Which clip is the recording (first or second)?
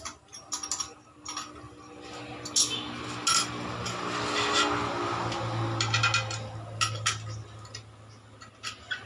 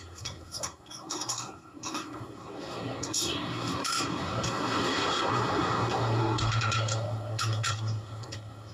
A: first